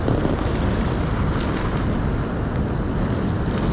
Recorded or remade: recorded